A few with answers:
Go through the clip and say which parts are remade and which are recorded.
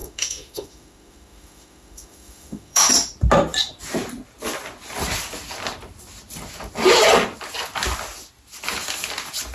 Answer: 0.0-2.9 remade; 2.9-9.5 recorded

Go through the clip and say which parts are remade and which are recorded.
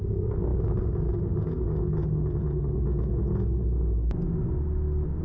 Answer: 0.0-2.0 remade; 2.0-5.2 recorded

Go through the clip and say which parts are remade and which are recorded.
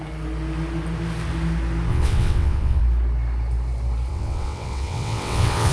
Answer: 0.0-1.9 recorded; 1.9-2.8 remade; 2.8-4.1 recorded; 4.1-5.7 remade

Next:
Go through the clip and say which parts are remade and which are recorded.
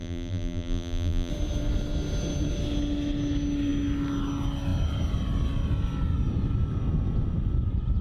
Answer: 0.0-1.3 remade; 1.3-8.0 recorded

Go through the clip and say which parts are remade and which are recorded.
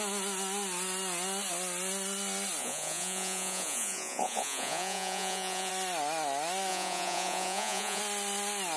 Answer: 0.0-2.6 recorded; 2.6-5.7 remade; 5.7-6.7 recorded; 6.7-8.0 remade; 8.0-8.8 recorded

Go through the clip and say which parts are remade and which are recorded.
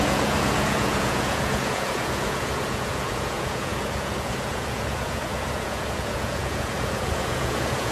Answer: 0.0-7.9 remade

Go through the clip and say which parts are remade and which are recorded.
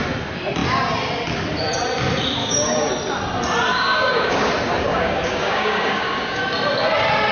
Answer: 0.0-2.4 recorded; 2.4-2.9 remade; 2.9-3.7 recorded; 3.7-4.5 remade; 4.5-4.9 recorded; 4.9-6.4 remade; 6.4-7.3 recorded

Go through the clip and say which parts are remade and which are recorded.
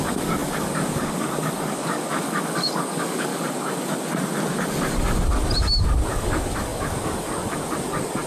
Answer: 0.0-3.3 remade; 3.3-6.1 recorded; 6.1-8.3 remade